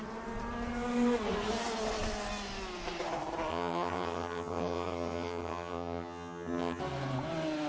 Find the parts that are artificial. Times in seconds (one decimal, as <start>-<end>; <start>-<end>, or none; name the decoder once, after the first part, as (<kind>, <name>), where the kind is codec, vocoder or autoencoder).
3.5-6.8 (vocoder, HiFi-GAN)